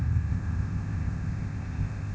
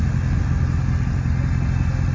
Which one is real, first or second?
second